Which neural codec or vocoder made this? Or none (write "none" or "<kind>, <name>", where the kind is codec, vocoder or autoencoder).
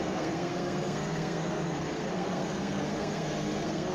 codec, SNAC